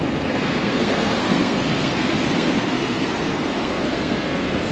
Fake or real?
fake